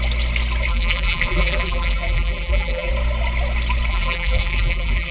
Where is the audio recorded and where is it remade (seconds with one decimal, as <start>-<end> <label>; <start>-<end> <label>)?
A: 0.0-0.7 recorded; 0.7-2.9 remade; 2.9-3.9 recorded; 3.9-5.1 remade